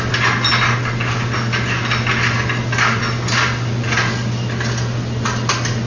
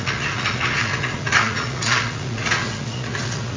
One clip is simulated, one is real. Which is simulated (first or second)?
second